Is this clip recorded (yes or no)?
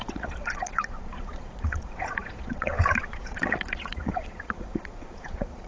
no